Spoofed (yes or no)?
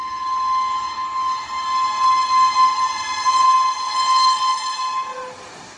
no